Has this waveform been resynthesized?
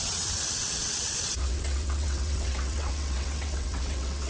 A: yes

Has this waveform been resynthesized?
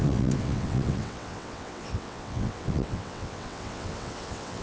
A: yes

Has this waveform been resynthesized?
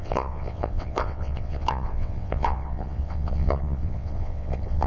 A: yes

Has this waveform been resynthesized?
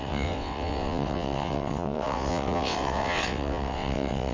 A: yes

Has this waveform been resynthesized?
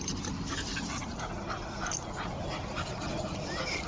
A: no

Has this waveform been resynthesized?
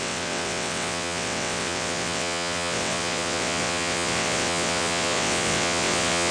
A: yes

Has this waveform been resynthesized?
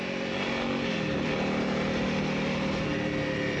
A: no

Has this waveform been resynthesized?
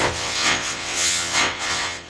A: yes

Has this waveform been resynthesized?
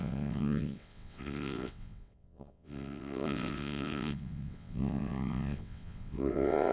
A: yes